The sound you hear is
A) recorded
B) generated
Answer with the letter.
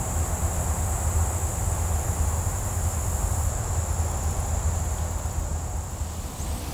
A